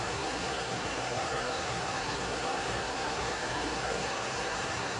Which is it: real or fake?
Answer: fake